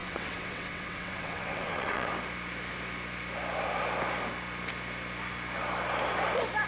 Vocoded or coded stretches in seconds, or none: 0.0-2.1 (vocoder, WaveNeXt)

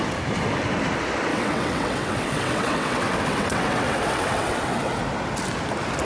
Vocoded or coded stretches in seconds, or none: 1.3-5.0 (vocoder, WaveNeXt)

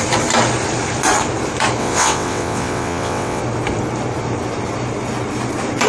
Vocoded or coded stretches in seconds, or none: 1.8-3.4 (vocoder, WaveNeXt)